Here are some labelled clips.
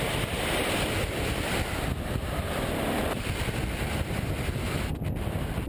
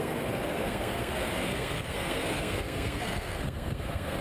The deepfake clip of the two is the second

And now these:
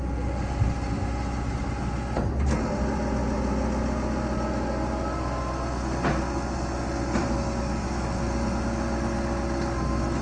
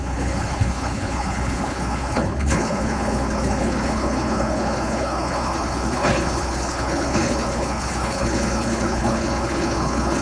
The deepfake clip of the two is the second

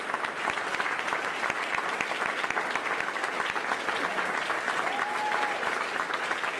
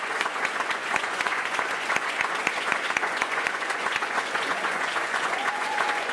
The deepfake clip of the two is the second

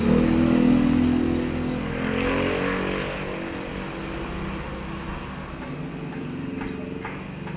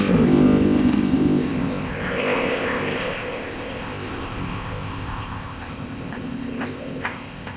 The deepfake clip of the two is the second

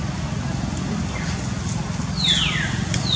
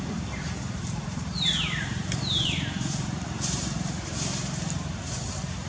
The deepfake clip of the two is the second